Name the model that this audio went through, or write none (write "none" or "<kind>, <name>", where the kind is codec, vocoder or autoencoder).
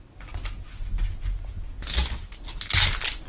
none